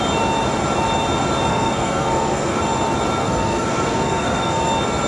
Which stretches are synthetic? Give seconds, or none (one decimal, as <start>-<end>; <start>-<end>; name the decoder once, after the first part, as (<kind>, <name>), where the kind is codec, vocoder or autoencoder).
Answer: 1.5-2.6 (codec, SNAC); 3.2-4.6